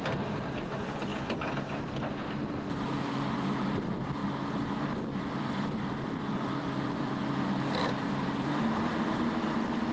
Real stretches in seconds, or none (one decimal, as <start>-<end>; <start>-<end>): 1.1-3.1; 4.2-5.2